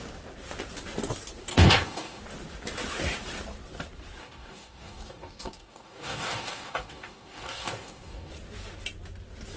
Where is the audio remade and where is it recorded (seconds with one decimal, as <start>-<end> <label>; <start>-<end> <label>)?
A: 0.0-1.5 recorded; 1.5-2.2 remade; 2.2-4.2 recorded; 4.2-8.3 remade; 8.3-9.6 recorded